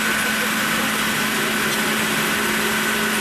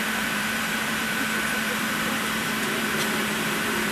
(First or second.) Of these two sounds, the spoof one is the second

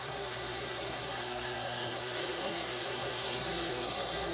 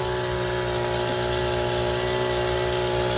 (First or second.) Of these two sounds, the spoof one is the first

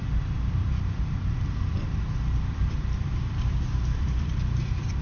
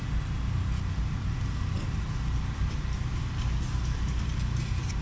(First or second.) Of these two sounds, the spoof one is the first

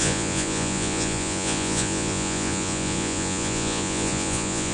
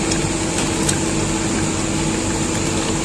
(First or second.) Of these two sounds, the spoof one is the first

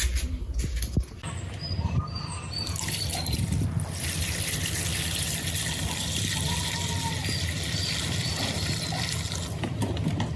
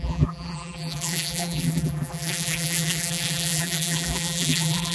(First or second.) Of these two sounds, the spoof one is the second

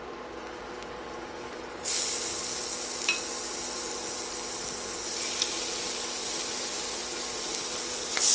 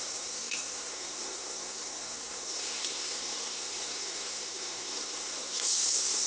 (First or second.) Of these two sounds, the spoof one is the second